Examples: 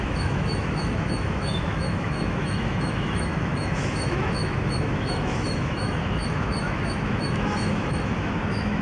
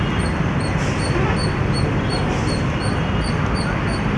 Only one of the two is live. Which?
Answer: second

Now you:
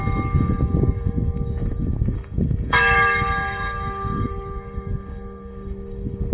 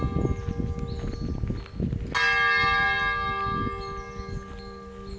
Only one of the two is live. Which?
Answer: second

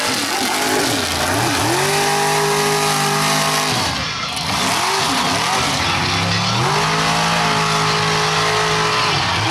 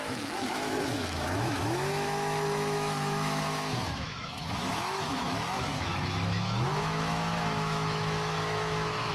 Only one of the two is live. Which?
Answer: first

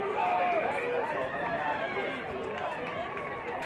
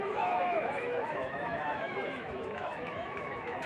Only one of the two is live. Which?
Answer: first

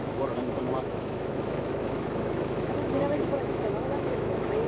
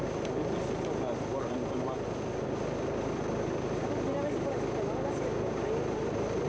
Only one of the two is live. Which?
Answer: second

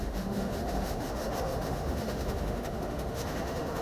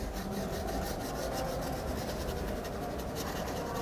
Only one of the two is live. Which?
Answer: second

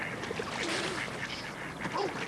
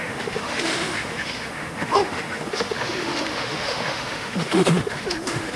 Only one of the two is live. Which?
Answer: first